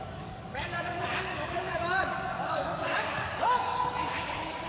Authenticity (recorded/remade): remade